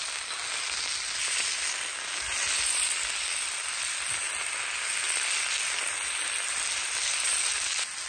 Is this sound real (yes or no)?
yes